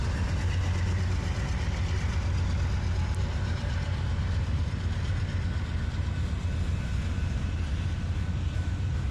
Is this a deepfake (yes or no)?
no